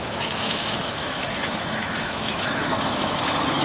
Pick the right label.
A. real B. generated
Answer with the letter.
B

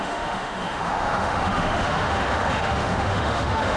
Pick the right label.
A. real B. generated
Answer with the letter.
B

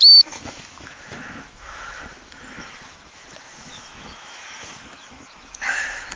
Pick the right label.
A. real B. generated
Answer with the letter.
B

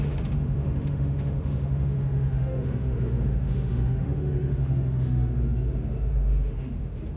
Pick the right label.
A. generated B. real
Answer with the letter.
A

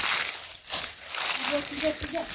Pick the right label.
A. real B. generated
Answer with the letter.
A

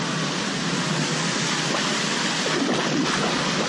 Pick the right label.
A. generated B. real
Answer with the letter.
B